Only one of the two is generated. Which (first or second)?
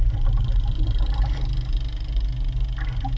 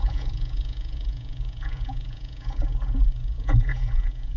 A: second